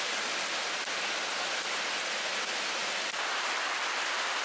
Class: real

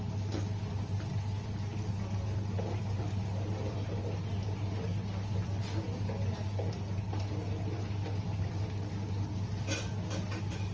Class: real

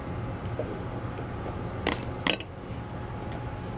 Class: real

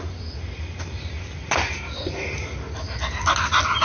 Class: real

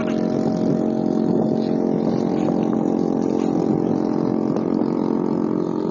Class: real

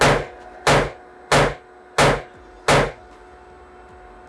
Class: real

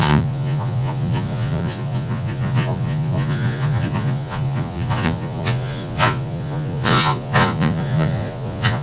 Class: fake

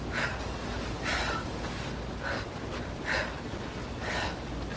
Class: real